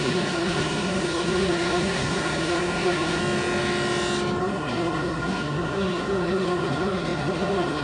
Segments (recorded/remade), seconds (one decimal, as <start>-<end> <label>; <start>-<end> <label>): 0.0-3.2 remade; 3.2-4.4 recorded; 4.4-7.8 remade